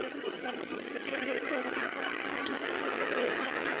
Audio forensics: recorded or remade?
remade